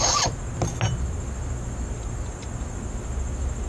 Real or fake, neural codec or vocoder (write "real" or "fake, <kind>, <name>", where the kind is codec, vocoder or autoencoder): real